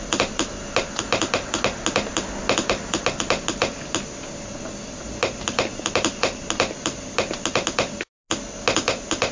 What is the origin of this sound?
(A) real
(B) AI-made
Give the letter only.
A